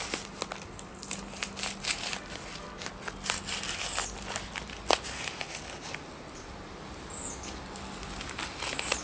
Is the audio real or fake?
real